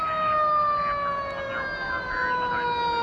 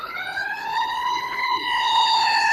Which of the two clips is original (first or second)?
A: first